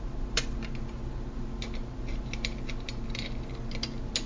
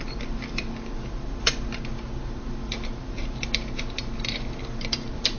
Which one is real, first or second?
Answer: first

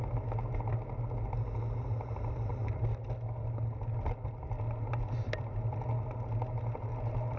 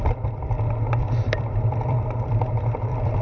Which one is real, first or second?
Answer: first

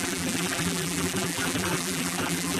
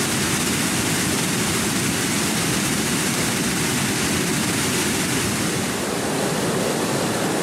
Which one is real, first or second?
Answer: second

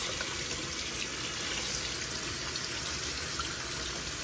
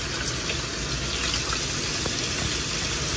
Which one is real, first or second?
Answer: second